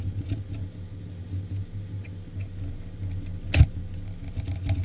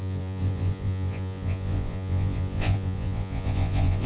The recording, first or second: first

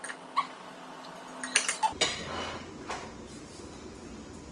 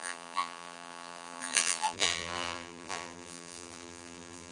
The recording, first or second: first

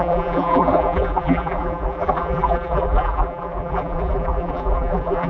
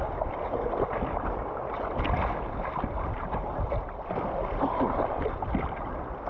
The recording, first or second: second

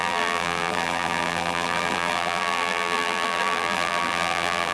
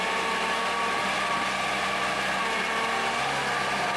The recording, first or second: second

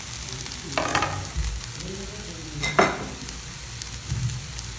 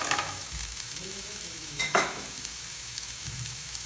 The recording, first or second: first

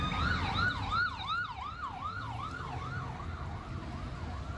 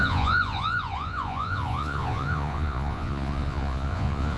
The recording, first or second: first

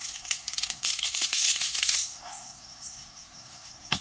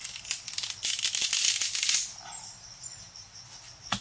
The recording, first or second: second